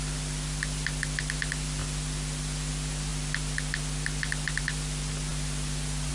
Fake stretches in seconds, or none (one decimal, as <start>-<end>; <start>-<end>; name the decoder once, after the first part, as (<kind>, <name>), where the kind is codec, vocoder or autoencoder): none